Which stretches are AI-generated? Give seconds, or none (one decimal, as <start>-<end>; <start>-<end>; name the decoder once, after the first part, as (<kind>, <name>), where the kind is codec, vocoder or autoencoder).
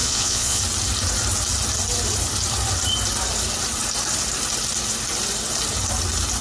0.0-0.6 (vocoder, Vocos)